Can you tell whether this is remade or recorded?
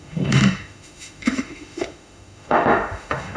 remade